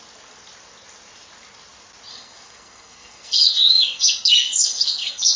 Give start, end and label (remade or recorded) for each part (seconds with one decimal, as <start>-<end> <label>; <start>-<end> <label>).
0.0-2.1 recorded; 2.1-5.4 remade